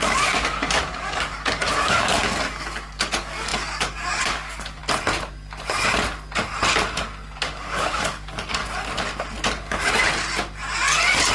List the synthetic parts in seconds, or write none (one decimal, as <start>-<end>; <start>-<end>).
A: 0.0-4.8; 7.4-8.6